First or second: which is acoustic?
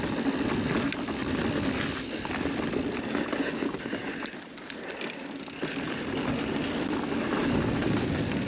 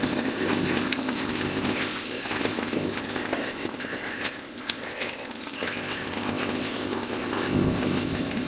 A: first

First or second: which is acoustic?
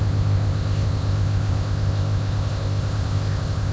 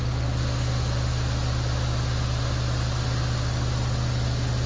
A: second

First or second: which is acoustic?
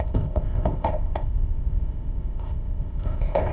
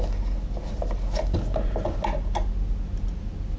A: second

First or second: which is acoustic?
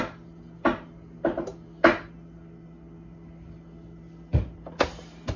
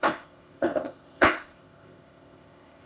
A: first